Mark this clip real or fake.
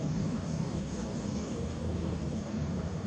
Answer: fake